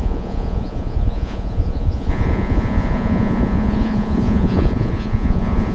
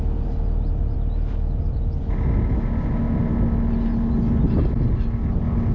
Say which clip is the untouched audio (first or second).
second